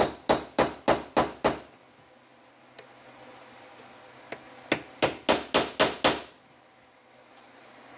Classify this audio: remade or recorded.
recorded